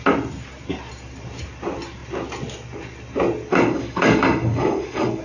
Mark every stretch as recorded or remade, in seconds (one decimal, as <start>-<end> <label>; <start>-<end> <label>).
0.0-3.5 recorded; 3.5-5.2 remade